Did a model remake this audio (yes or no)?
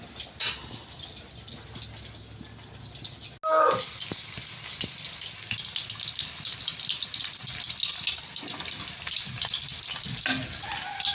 no